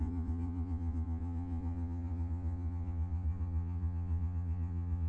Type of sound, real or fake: fake